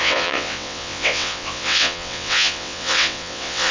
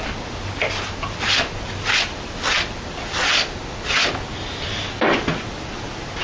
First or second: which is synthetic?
first